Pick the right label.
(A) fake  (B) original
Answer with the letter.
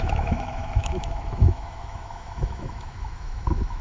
A